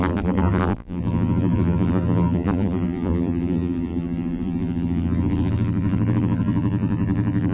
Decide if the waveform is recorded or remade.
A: remade